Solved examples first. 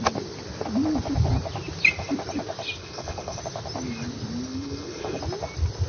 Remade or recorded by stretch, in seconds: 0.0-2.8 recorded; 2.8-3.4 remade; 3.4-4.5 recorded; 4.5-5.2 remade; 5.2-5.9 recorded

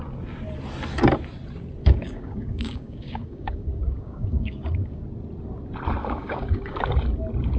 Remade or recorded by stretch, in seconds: 0.0-1.8 recorded; 1.8-5.0 remade; 5.0-6.0 recorded; 6.0-6.9 remade; 6.9-7.6 recorded

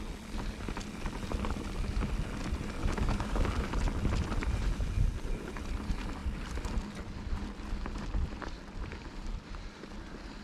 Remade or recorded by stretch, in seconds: 0.0-2.8 recorded; 2.8-3.7 remade; 3.7-10.4 recorded

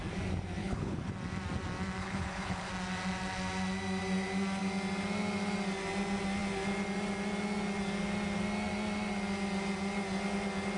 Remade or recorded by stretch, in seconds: 0.0-0.6 recorded; 0.6-1.1 remade; 1.1-2.0 recorded; 2.0-2.7 remade; 2.7-10.8 recorded

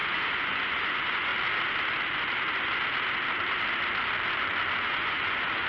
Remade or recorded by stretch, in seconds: 0.0-1.3 remade; 1.3-4.7 recorded; 4.7-5.7 remade